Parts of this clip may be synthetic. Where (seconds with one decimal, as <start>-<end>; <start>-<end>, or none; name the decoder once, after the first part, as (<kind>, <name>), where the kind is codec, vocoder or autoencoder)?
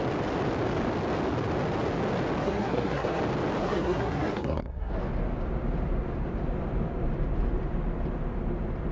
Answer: 2.4-3.2 (codec, SNAC); 3.6-4.9